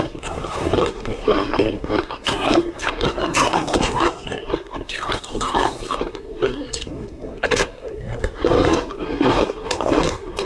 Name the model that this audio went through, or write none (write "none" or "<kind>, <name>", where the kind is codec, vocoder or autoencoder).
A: codec, SNAC